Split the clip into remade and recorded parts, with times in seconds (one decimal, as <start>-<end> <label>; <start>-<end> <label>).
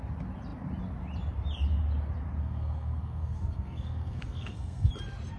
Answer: 0.0-2.4 recorded; 2.4-4.9 remade; 4.9-5.4 recorded